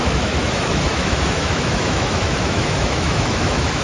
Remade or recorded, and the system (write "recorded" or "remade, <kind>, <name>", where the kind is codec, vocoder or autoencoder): remade, autoencoder, DAC-VAE